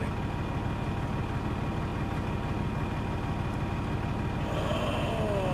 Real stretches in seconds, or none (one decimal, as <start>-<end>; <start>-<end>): 0.0-5.5